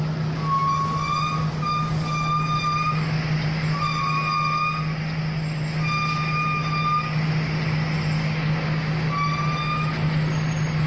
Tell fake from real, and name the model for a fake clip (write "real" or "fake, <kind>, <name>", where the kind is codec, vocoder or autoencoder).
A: real